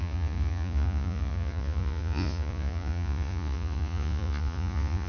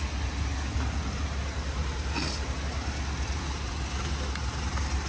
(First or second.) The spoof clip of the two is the first